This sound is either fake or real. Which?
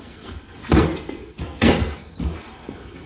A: fake